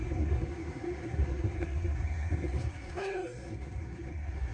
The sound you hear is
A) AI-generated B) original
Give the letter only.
A